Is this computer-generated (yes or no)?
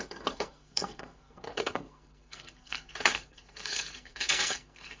yes